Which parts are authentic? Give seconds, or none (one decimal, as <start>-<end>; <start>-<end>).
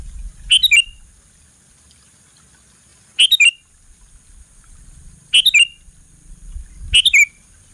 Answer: 0.0-7.7